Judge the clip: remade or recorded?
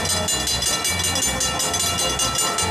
recorded